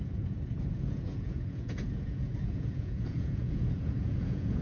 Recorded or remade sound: remade